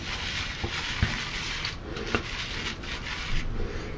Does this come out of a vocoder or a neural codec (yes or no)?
no